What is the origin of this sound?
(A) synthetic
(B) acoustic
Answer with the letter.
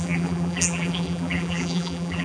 A